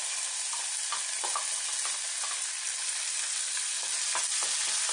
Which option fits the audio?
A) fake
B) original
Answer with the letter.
B